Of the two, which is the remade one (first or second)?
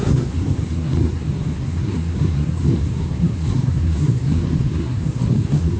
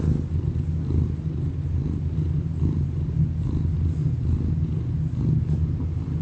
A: first